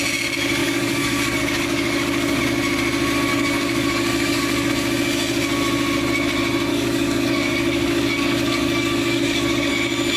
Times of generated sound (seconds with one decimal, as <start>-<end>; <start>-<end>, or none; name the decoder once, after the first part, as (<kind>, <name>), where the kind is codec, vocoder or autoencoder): 0.6-2.4 (codec, DAC); 3.3-4.7; 6.7-9.7